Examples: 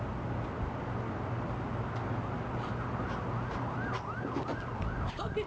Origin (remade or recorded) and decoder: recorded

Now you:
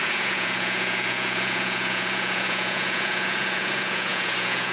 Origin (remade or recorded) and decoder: remade, vocoder, Vocos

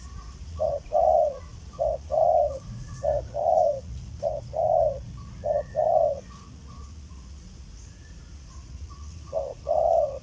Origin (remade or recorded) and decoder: remade, vocoder, Vocos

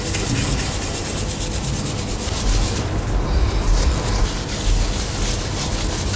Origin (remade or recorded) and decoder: recorded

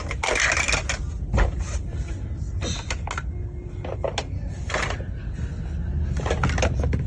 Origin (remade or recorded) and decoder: recorded